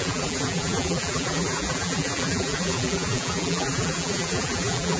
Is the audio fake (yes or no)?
yes